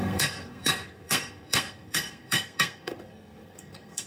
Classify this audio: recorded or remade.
remade